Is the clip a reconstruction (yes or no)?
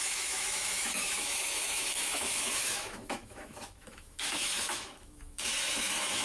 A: yes